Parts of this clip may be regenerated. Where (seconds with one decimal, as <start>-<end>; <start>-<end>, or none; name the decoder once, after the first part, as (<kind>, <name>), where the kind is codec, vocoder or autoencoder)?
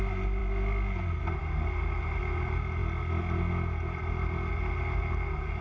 none